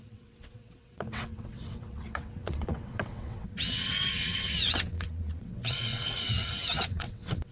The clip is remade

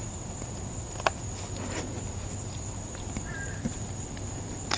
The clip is recorded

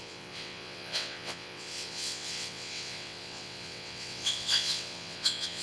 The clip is remade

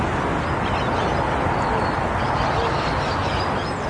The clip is recorded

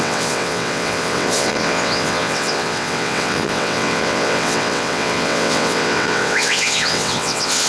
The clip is remade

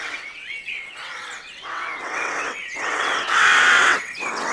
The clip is remade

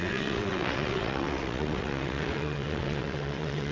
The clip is remade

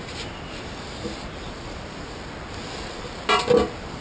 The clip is recorded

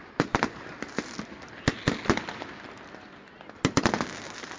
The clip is recorded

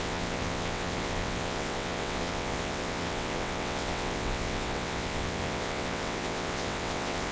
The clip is remade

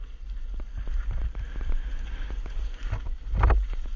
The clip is recorded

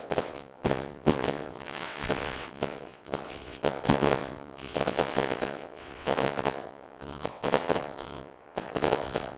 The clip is remade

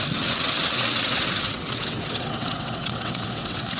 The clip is remade